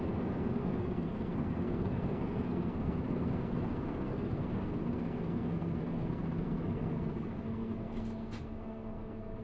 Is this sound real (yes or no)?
no